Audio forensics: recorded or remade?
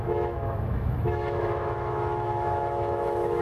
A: remade